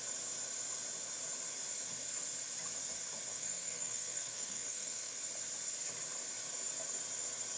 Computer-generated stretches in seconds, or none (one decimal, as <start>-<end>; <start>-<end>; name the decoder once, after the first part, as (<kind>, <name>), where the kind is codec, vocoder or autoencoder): 3.3-5.1 (codec, SNAC)